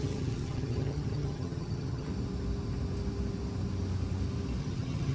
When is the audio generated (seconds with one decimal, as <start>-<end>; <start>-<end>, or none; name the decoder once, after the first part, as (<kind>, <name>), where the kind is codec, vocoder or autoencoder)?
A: 0.0-2.1 (vocoder, HiFi-GAN); 4.6-5.1